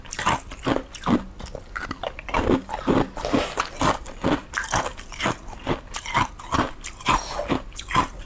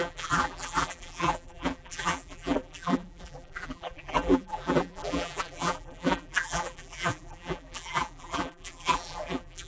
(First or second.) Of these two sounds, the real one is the first